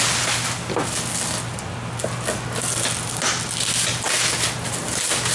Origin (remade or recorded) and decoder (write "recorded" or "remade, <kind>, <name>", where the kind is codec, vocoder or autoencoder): recorded